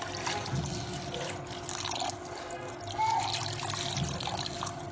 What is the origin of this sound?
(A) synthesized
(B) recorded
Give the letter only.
B